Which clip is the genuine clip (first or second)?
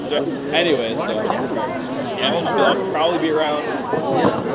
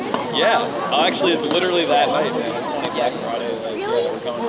second